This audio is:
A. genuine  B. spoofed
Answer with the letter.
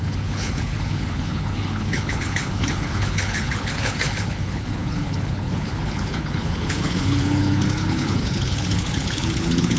B